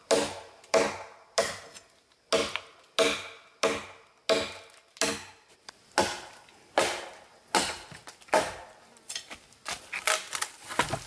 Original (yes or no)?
yes